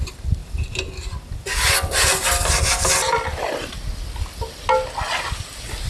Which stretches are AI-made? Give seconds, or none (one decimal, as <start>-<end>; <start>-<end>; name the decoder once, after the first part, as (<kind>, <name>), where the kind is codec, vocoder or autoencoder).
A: none